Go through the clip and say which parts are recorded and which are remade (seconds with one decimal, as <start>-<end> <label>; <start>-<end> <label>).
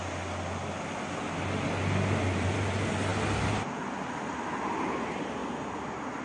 0.0-6.2 recorded